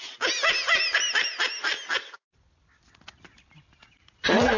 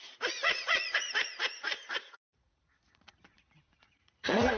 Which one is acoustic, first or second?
first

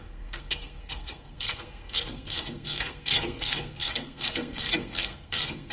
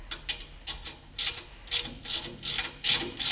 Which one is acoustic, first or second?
second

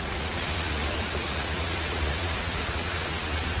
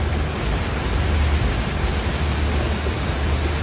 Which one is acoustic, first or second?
second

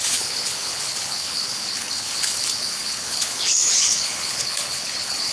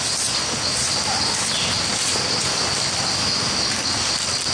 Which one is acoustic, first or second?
second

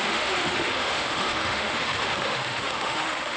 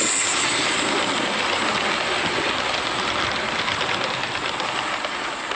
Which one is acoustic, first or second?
second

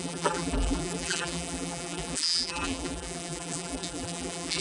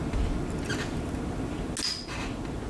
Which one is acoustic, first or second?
second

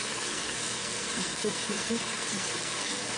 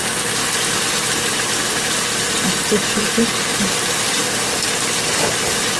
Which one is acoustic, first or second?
second